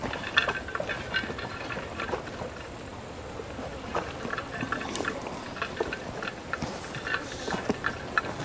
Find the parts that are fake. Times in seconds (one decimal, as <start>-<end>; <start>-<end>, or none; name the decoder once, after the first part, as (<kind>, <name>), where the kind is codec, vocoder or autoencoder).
2.9-6.0 (vocoder, BigVGAN v2)